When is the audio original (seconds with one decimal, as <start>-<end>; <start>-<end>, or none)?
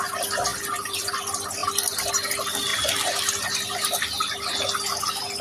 0.0-0.5; 1.1-1.6; 2.1-5.4